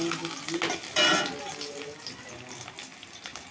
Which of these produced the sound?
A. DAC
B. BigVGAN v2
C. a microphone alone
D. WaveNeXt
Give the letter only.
C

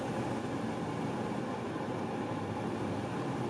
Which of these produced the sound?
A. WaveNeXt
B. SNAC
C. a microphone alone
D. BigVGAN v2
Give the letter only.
C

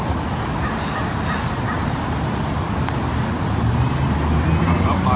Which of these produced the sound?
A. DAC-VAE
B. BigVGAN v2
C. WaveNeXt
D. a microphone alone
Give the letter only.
D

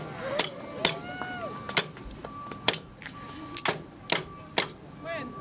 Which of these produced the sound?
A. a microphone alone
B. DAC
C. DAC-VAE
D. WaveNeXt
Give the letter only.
A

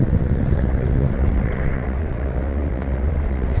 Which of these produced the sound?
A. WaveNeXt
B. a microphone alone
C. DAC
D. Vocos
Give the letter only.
A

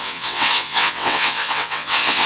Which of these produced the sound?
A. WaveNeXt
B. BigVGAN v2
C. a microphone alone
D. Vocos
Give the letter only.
A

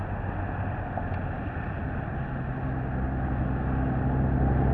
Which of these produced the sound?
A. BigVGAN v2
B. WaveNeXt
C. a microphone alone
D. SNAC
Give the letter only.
C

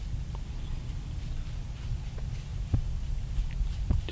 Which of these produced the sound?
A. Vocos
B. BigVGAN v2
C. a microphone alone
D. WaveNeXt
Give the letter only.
C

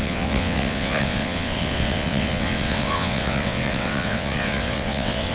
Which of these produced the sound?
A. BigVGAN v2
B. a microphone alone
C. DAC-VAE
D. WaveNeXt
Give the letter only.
D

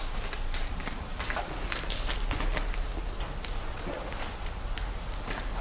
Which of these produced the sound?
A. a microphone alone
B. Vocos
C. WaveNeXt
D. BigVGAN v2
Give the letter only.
A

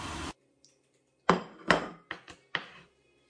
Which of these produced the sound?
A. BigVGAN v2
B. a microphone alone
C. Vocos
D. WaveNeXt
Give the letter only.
B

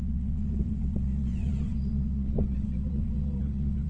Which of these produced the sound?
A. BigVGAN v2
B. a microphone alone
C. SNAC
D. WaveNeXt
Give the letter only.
D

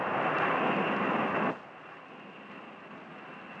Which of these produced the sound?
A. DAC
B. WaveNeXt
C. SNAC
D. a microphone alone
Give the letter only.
D